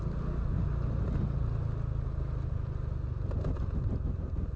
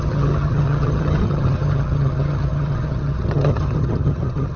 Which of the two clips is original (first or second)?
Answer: first